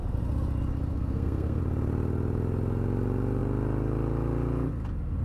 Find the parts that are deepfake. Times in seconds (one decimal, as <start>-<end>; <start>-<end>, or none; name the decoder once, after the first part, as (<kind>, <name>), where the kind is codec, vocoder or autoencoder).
0.9-1.6 (codec, SNAC)